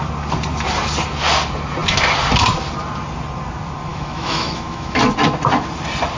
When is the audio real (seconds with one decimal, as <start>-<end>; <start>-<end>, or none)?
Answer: 0.0-3.9; 5.0-6.2